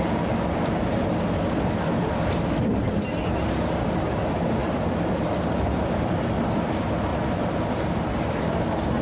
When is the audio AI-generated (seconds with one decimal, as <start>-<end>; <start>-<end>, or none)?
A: 4.6-6.0; 7.1-8.5